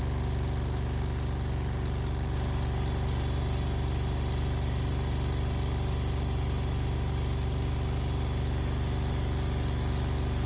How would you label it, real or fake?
real